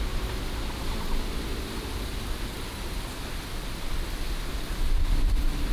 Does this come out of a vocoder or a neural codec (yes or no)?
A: no